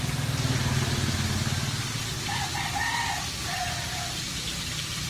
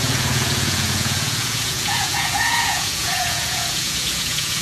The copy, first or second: second